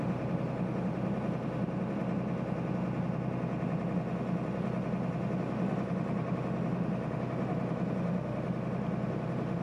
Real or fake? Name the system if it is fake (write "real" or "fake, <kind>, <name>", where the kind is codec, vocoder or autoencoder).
real